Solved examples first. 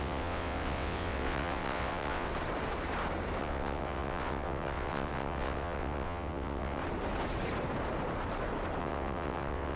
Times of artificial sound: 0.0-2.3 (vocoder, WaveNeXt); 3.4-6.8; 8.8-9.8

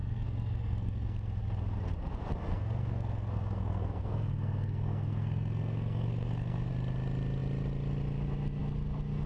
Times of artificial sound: 0.0-1.4 (codec, SNAC); 2.5-6.7

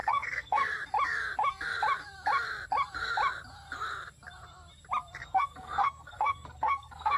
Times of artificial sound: 0.0-0.7 (codec, SNAC); 5.2-7.2

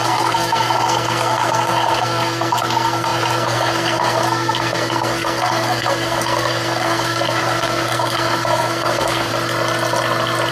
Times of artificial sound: 0.0-9.3 (codec, SNAC)

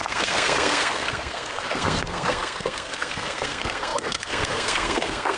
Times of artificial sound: 0.0-5.4 (codec, SNAC)